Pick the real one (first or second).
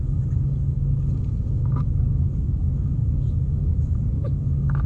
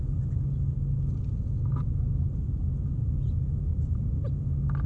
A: second